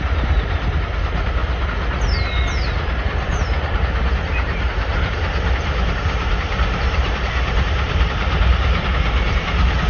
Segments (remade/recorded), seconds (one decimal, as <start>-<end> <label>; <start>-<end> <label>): 0.0-1.4 remade; 1.4-2.6 recorded; 2.6-9.9 remade